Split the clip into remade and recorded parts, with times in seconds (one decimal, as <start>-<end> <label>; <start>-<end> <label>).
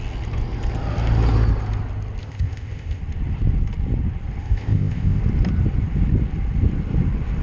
0.0-2.2 recorded; 2.2-3.0 remade; 3.0-4.4 recorded; 4.4-5.2 remade; 5.2-7.4 recorded